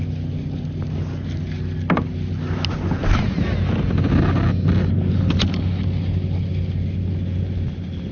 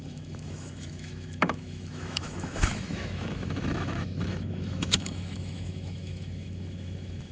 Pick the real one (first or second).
first